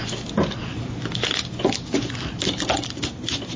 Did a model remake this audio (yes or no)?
no